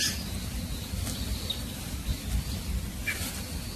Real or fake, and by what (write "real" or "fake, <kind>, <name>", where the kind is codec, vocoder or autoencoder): real